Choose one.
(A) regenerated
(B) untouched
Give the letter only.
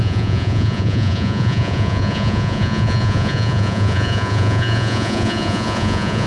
A